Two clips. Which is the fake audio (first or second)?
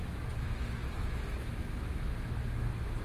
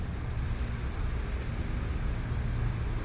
first